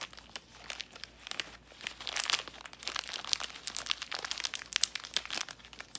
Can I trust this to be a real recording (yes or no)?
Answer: yes